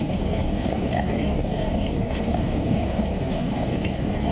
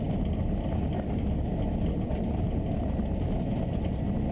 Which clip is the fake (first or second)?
first